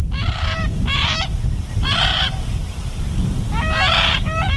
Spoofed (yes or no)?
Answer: yes